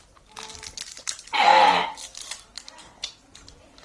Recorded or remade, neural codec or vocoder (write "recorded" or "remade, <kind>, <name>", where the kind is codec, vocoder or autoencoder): recorded